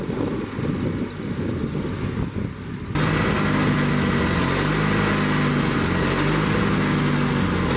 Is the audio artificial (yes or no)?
no